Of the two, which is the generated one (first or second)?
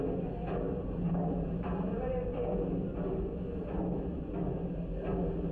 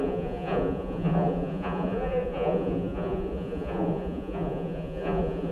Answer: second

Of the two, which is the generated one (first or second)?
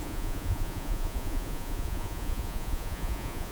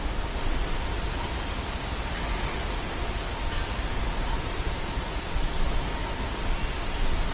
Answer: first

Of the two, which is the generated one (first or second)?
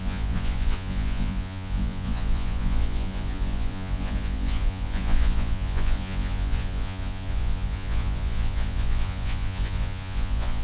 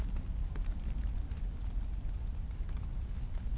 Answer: first